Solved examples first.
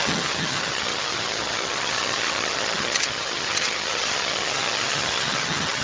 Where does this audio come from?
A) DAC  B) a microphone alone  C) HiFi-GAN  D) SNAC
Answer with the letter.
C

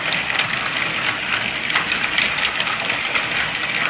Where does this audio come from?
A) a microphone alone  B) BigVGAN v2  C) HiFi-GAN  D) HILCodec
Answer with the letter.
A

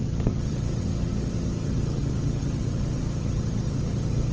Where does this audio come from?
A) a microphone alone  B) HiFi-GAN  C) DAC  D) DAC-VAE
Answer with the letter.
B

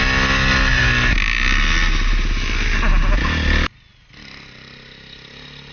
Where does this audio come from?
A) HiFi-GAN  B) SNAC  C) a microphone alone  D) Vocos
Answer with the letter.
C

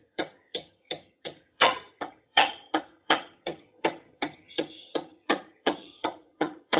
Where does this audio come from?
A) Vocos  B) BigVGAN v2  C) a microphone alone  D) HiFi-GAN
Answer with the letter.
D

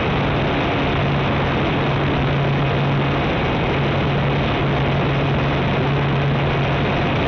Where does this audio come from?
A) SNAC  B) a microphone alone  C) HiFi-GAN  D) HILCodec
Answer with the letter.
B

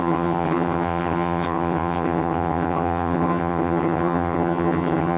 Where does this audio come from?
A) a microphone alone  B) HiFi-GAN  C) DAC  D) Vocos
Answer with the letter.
B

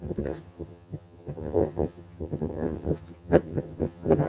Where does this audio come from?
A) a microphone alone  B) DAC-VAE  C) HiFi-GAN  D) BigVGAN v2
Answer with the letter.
C